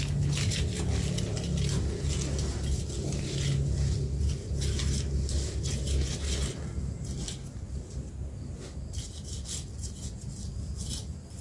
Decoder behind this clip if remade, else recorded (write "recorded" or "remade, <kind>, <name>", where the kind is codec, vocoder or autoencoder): recorded